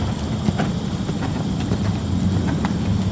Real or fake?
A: real